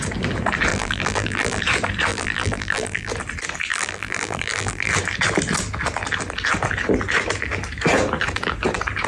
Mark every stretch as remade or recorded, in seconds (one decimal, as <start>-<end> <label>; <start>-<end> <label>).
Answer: 0.0-0.7 recorded; 0.7-1.6 remade; 1.6-2.1 recorded; 2.1-3.1 remade; 3.1-3.7 recorded; 3.7-4.9 remade; 4.9-9.1 recorded